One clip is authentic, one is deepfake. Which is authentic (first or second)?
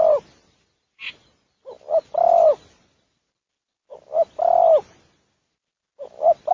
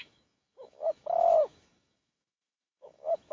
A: first